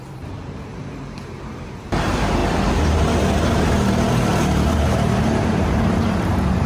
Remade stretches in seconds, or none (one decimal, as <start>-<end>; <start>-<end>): 0.0-2.4; 4.1-6.7